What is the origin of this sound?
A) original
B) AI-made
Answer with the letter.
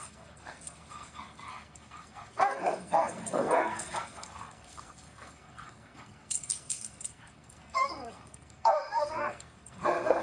B